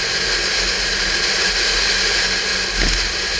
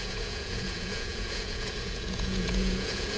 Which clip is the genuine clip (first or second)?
first